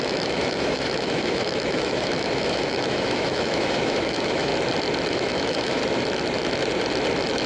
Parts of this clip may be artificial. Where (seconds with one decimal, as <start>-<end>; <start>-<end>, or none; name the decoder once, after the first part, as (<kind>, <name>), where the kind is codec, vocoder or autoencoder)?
0.0-4.5 (autoencoder, DAC-VAE); 5.1-5.8